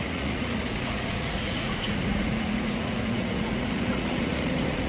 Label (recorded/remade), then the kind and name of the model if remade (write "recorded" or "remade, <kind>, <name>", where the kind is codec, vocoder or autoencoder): remade, vocoder, Vocos